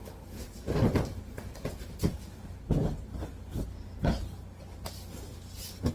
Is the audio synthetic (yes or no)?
no